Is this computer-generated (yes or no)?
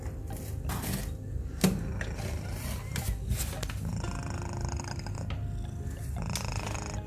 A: no